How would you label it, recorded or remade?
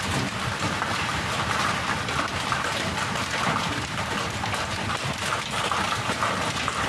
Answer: recorded